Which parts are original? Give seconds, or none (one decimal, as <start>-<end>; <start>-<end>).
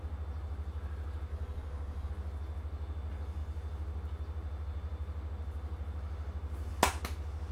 0.0-1.3; 2.1-7.5